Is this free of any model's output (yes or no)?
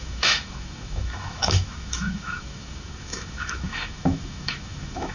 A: no